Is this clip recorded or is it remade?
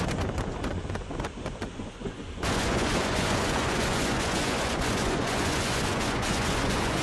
remade